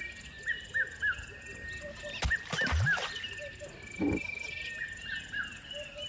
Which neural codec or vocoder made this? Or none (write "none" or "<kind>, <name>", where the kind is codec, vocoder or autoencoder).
none